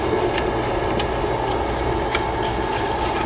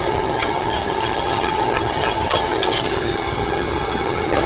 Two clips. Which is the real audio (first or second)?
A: first